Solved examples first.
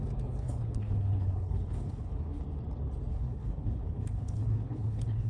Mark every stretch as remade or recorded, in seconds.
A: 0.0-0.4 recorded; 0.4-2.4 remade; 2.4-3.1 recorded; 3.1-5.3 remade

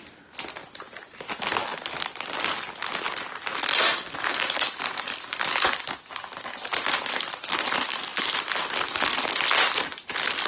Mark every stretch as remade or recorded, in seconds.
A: 0.0-10.5 recorded

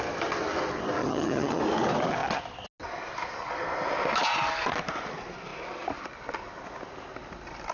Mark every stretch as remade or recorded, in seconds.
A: 0.0-1.0 recorded; 1.0-1.6 remade; 1.6-7.7 recorded

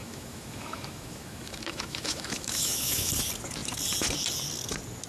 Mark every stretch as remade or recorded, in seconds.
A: 0.0-3.1 remade; 3.1-5.1 recorded

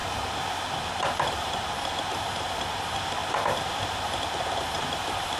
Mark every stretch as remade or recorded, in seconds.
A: 0.0-0.9 recorded; 0.9-5.4 remade